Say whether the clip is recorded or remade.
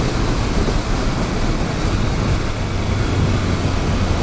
recorded